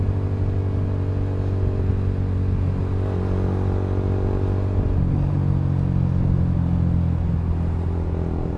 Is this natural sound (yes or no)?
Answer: yes